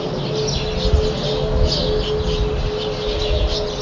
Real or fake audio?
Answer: real